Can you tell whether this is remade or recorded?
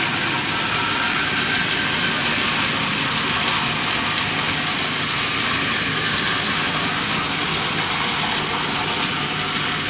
recorded